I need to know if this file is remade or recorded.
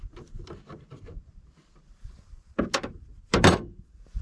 remade